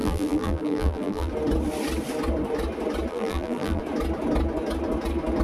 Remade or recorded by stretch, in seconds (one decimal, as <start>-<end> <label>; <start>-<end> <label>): 0.0-1.3 remade; 1.3-3.1 recorded; 3.1-3.8 remade; 3.8-5.4 recorded